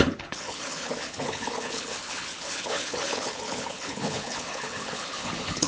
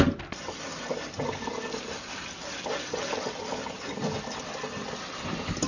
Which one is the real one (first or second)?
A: second